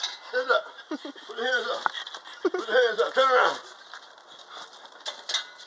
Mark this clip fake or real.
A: real